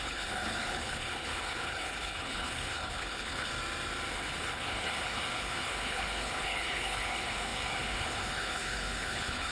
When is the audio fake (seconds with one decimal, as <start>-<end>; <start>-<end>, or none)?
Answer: 0.0-3.5; 4.1-9.5